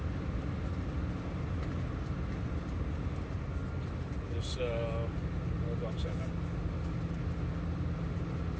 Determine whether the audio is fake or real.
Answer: real